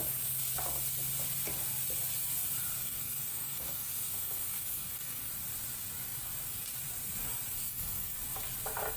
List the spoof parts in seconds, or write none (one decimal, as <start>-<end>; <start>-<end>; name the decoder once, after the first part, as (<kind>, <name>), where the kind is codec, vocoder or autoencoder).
2.8-5.3 (codec, SNAC); 7.6-8.1